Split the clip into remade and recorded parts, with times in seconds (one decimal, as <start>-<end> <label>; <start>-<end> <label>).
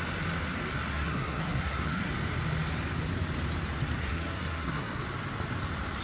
0.0-0.9 recorded; 0.9-2.1 remade; 2.1-4.0 recorded; 4.0-5.0 remade; 5.0-6.0 recorded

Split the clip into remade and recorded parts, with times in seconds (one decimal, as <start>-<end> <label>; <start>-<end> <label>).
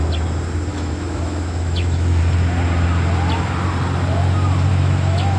0.0-0.7 recorded; 0.7-2.2 remade; 2.2-4.7 recorded; 4.7-5.4 remade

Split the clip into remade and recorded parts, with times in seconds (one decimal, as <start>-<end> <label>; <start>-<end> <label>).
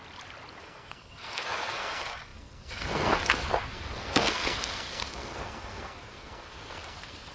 0.0-0.6 recorded; 0.6-7.3 remade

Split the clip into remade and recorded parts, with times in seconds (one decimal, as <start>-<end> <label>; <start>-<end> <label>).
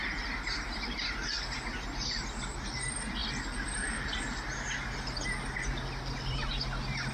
0.0-7.1 recorded